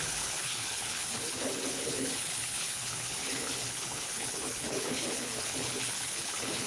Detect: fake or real fake